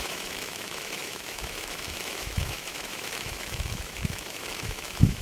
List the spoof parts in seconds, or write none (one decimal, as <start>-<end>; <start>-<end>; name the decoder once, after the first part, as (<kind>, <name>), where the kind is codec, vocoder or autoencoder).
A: 0.0-5.2 (autoencoder, DAC-VAE)